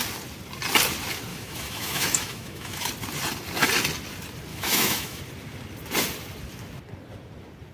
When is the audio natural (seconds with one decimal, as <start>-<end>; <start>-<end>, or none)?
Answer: 0.0-1.3; 2.9-4.5; 5.2-7.7